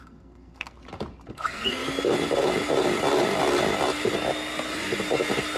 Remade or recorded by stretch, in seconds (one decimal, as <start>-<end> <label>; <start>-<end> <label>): 0.0-0.8 remade; 0.8-1.3 recorded; 1.3-1.8 remade; 1.8-5.6 recorded